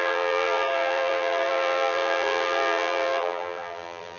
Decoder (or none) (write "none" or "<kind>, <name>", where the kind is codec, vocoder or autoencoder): vocoder, BigVGAN v2